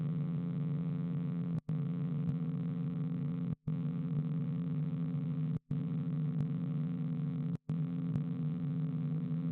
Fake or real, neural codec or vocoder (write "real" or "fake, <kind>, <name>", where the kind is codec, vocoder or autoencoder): fake, vocoder, BigVGAN v2